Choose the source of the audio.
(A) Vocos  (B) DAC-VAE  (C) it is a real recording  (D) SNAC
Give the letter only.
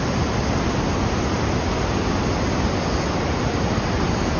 C